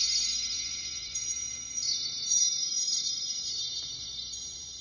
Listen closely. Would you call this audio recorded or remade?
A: remade